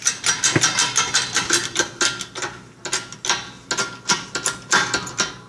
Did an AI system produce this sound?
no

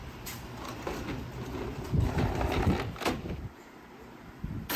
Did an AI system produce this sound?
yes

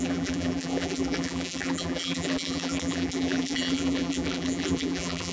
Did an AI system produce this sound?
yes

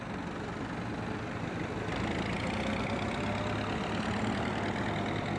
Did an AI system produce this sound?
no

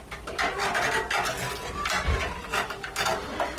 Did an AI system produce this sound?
no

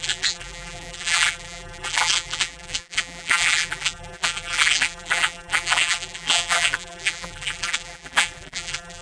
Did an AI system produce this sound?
yes